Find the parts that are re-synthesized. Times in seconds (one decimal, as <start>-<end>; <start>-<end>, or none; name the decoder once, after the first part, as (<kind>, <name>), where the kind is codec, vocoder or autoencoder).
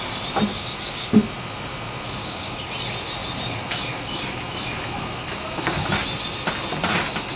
0.5-1.1 (codec, DAC); 2.2-2.7